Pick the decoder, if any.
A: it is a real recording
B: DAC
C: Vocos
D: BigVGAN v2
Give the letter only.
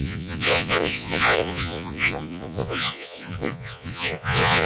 C